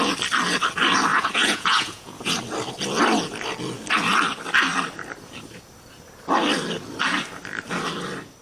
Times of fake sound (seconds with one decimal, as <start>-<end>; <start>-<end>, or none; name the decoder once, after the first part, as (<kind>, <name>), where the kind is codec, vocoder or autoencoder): 1.1-2.3 (vocoder, Vocos)